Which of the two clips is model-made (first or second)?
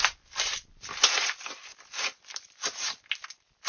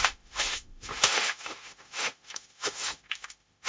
second